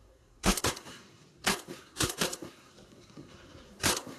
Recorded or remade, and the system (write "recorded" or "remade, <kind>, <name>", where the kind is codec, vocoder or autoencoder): remade, codec, SNAC